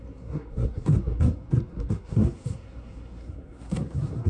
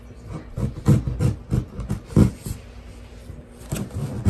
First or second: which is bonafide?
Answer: second